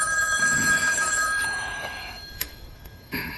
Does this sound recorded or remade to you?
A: remade